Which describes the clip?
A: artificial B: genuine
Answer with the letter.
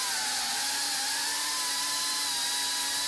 B